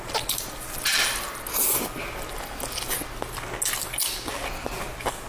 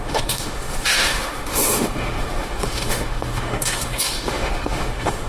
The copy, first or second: second